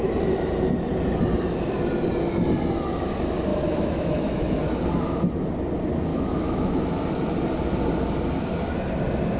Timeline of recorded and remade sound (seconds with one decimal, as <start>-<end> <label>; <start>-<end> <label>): 0.0-3.5 recorded; 3.5-4.6 remade; 4.6-6.1 recorded; 6.1-7.0 remade; 7.0-9.4 recorded